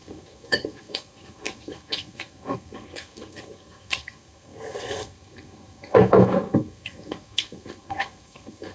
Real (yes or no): no